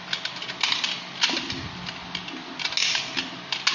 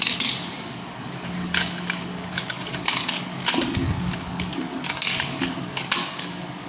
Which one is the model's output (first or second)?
second